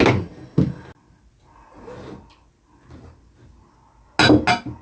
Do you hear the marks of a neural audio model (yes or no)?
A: no